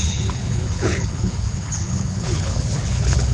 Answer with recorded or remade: remade